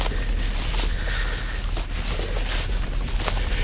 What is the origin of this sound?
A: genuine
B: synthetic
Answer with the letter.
A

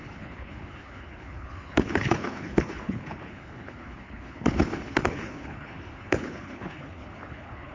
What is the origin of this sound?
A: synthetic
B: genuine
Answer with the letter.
A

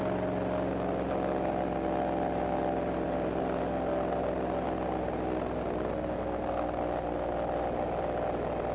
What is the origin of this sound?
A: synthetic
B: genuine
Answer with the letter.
B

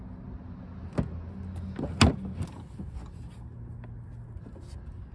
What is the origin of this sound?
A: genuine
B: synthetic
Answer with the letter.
A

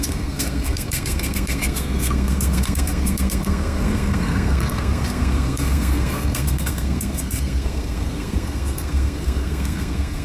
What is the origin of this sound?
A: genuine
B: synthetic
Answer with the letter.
B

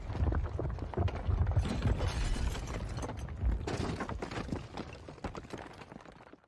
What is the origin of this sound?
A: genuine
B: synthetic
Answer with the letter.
A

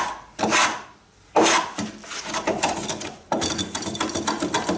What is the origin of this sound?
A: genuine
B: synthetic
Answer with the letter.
A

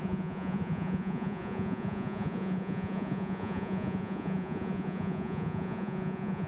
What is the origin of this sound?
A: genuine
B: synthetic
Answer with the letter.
B